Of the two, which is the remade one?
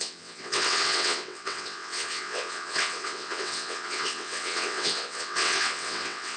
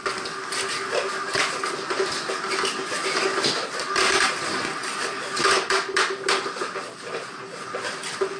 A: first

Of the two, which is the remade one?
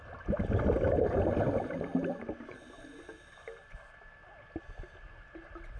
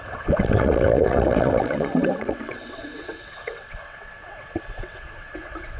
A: second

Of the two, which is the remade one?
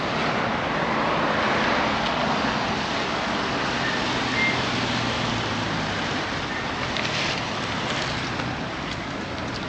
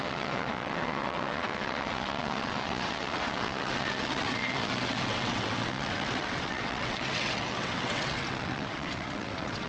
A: second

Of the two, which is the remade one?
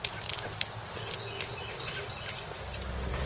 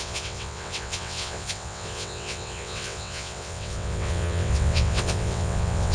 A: second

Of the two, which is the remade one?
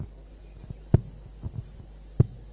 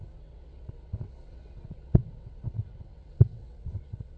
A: second